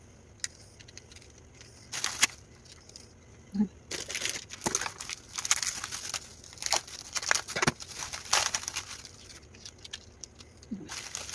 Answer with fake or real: real